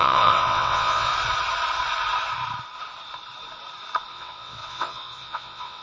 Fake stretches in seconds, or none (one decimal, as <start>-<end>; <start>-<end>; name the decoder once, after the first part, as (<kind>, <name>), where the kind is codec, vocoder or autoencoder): 0.0-1.1 (vocoder, WaveNeXt); 4.1-5.8